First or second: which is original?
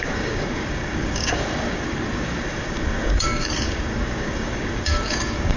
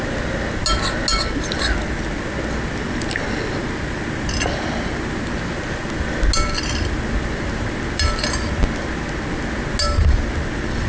second